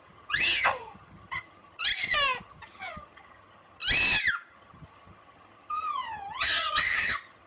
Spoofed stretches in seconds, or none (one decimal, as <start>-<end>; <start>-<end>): 0.0-1.9; 2.4-3.8; 4.5-7.5